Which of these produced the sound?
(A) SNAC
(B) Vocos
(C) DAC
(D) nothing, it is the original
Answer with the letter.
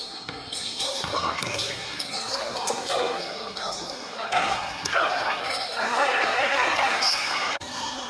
A